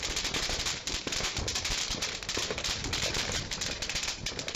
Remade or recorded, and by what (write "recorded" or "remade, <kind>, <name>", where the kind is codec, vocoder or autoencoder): remade, vocoder, BigVGAN v2